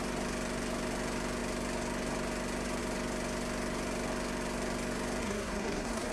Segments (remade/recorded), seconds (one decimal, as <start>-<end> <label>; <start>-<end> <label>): 0.0-5.2 recorded; 5.2-6.1 remade